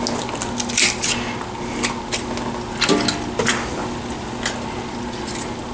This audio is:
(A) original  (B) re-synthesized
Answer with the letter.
A